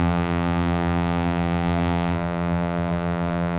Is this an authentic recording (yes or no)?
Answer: no